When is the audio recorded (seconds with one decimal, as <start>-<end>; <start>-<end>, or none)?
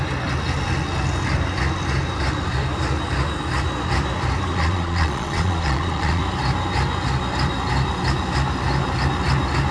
0.0-4.5; 6.2-9.7